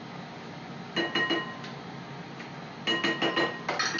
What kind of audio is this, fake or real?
real